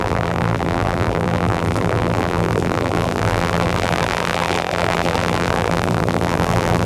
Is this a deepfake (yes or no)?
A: yes